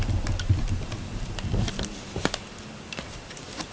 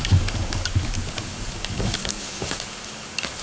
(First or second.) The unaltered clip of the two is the first